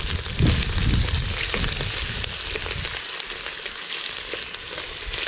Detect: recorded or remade recorded